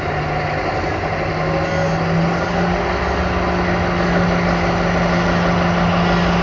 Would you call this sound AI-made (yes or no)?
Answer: no